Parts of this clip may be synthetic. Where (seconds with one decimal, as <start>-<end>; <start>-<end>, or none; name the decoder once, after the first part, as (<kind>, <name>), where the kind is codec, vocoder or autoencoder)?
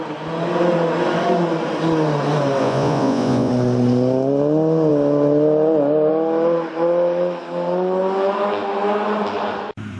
2.6-3.5 (vocoder, Vocos)